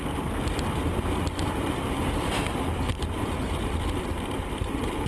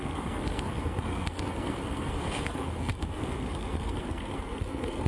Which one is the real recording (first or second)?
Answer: first